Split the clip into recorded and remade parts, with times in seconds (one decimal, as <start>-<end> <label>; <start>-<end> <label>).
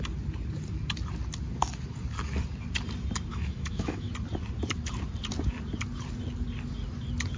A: 0.0-3.3 recorded; 3.3-4.1 remade; 4.1-7.4 recorded